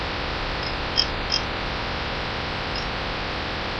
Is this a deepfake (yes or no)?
no